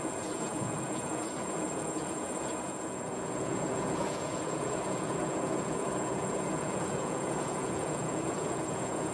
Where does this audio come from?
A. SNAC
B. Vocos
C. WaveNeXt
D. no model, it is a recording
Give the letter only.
B